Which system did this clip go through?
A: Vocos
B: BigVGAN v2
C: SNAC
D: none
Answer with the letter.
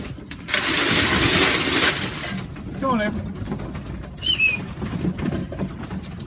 D